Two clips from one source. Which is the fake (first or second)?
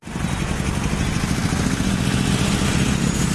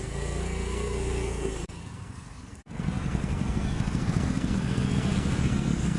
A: second